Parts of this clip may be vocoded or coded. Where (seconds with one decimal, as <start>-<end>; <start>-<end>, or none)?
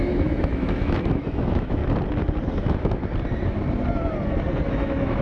0.0-1.8; 2.6-3.0; 4.7-5.2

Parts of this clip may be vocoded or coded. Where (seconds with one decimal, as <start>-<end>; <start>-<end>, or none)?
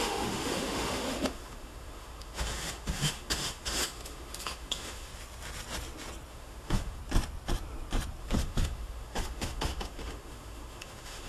0.0-5.1; 6.3-7.0; 8.2-11.3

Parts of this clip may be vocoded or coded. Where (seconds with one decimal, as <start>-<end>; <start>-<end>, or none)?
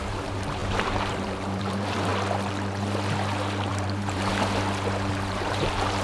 0.0-2.1; 3.7-4.3; 5.1-6.0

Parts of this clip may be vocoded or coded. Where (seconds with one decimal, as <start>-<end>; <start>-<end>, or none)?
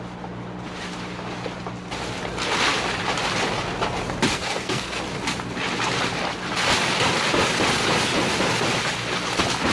4.3-5.0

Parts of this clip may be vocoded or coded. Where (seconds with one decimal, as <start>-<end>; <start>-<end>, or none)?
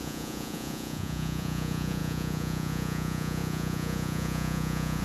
0.0-5.0